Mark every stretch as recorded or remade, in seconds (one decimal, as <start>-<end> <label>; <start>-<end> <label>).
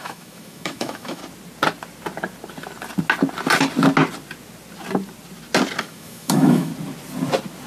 0.0-1.2 remade; 1.2-5.8 recorded; 5.8-6.7 remade; 6.7-7.7 recorded